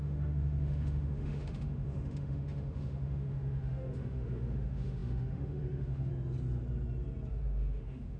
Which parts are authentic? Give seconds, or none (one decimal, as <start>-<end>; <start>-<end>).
6.1-7.3